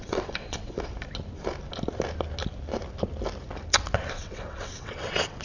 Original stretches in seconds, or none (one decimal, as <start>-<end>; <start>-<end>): 0.9-4.1